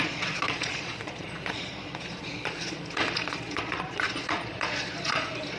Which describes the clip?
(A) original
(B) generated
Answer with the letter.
B